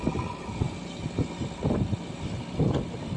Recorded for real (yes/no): yes